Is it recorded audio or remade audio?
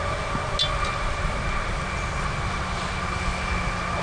recorded